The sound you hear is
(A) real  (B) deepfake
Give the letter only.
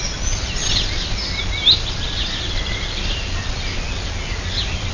A